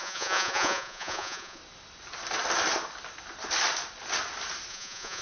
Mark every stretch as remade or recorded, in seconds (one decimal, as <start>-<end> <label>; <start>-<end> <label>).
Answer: 0.0-1.6 remade; 1.6-4.7 recorded; 4.7-5.2 remade